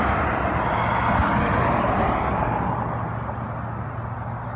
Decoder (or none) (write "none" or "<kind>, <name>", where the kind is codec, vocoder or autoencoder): none